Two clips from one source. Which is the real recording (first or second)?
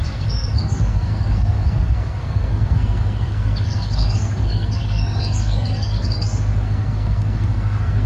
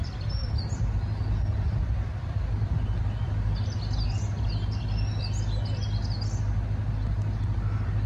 second